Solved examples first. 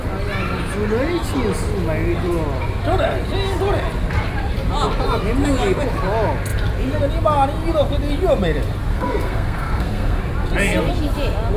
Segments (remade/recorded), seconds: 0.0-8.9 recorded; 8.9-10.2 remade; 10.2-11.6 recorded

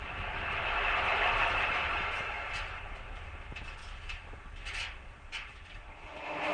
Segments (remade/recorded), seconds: 0.0-3.8 recorded; 3.8-4.4 remade; 4.4-6.5 recorded

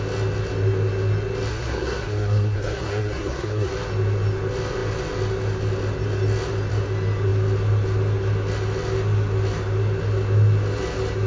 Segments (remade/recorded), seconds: 0.0-1.5 recorded; 1.5-3.7 remade; 3.7-11.3 recorded

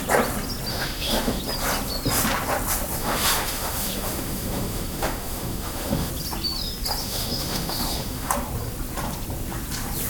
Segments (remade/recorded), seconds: 0.0-0.7 recorded; 0.7-1.4 remade; 1.4-3.0 recorded; 3.0-6.1 remade; 6.1-7.0 recorded; 7.0-8.3 remade; 8.3-10.1 recorded